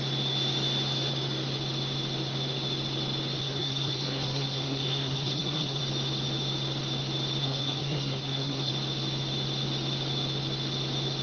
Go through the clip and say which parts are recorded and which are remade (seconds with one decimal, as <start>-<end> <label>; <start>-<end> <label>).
0.0-3.4 recorded; 3.4-5.8 remade; 5.8-7.4 recorded; 7.4-8.7 remade; 8.7-11.2 recorded